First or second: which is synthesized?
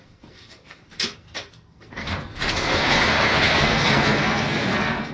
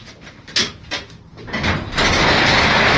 first